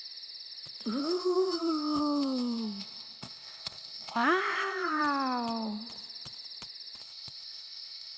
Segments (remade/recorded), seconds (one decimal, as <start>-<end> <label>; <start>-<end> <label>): 0.0-1.0 recorded; 1.0-5.0 remade; 5.0-7.0 recorded; 7.0-8.2 remade